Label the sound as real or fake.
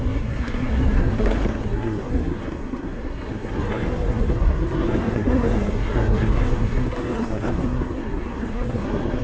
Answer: fake